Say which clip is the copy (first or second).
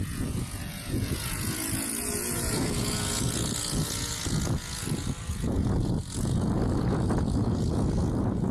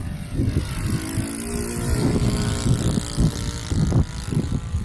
first